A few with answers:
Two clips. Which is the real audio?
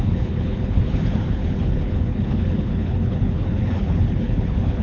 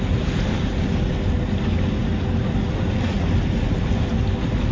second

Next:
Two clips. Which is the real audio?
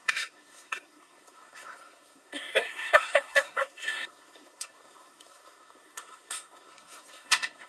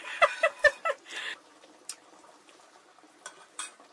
second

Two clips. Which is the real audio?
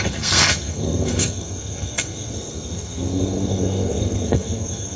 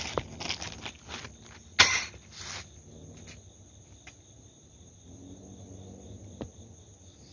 second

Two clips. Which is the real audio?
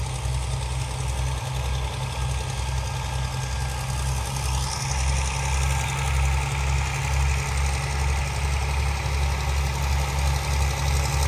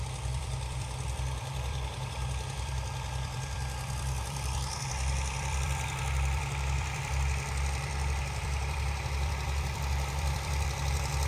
first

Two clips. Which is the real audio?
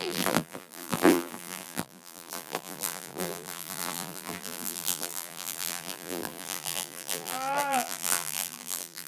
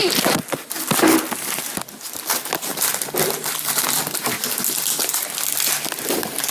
second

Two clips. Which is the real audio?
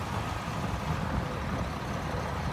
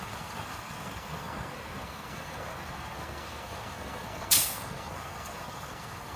first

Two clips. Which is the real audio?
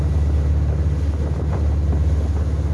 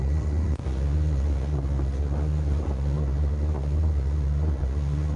first